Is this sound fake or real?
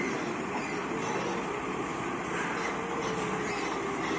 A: real